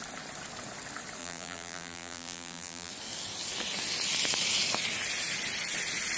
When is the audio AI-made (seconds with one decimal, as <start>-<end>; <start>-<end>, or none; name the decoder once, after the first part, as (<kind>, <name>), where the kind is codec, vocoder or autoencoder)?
1.2-2.9 (vocoder, BigVGAN v2)